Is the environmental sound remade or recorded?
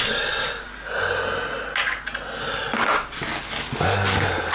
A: recorded